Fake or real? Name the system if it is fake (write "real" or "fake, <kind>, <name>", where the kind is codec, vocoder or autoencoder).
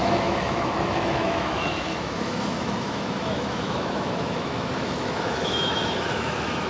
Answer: fake, autoencoder, DAC-VAE